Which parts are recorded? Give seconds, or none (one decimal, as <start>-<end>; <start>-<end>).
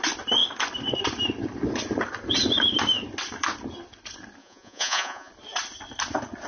0.0-4.4; 5.3-6.5